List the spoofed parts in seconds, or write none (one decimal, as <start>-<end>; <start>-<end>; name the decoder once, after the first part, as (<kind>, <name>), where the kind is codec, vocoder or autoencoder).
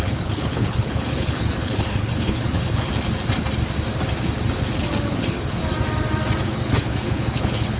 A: 0.0-2.9 (codec, HILCodec); 5.1-5.6; 6.4-7.8